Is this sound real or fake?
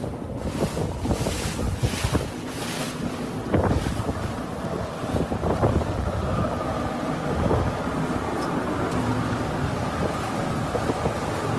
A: real